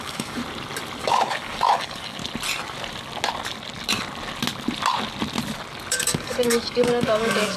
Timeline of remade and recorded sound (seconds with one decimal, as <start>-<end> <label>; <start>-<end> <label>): 0.0-0.4 remade; 0.4-1.0 recorded; 1.0-2.2 remade; 2.2-5.9 recorded; 5.9-7.6 remade